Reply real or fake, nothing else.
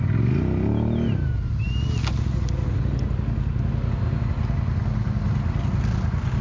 real